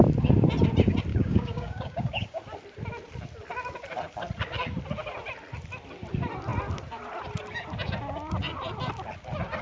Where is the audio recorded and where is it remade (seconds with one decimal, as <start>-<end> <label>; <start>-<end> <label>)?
0.0-1.1 recorded; 1.1-2.4 remade; 2.4-9.6 recorded